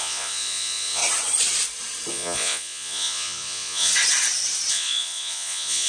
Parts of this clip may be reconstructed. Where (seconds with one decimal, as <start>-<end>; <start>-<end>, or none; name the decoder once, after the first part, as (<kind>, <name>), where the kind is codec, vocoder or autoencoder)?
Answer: 0.0-1.0 (vocoder, Vocos); 2.1-3.9; 4.7-5.9